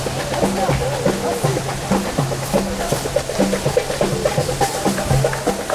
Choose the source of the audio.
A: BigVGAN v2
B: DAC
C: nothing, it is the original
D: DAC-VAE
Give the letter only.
C